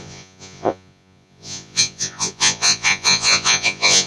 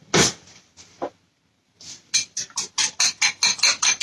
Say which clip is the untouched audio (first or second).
second